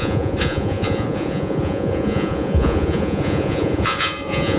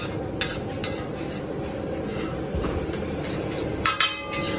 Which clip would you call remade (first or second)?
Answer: first